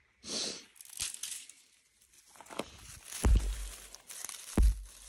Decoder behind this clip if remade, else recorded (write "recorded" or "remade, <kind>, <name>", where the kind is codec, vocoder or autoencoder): recorded